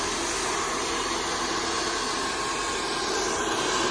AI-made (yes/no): no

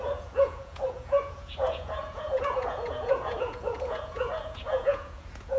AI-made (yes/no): yes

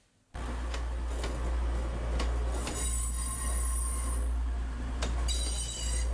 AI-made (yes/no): no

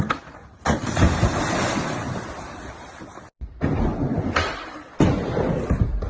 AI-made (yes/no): no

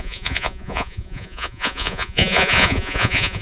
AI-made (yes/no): yes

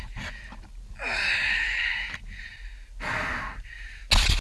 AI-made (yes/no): no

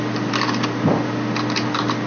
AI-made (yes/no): no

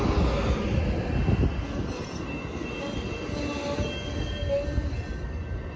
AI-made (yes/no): no